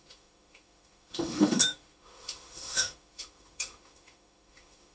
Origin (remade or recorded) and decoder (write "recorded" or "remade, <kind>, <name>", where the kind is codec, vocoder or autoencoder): remade, autoencoder, DAC-VAE